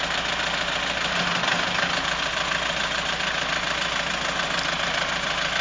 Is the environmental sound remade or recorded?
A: recorded